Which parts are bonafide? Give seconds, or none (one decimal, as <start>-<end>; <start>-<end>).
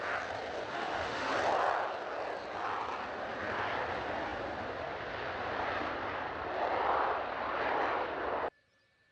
0.0-0.7; 1.3-9.1